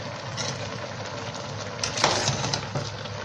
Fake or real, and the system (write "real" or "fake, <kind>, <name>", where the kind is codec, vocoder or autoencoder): real